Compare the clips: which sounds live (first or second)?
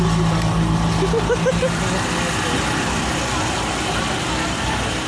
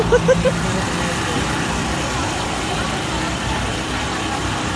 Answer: first